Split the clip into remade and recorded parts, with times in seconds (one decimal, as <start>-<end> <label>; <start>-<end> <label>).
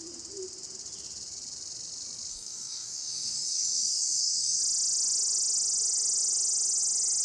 0.0-2.3 recorded; 2.3-4.6 remade; 4.6-7.2 recorded